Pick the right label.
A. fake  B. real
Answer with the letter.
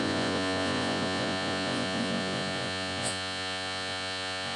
A